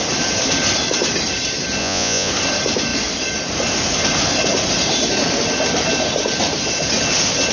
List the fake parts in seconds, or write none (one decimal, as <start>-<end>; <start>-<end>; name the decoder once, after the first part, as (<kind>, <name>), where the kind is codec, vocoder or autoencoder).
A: 1.8-2.3 (vocoder, Vocos)